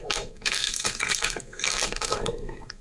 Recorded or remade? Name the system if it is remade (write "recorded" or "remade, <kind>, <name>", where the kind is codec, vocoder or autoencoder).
remade, codec, SNAC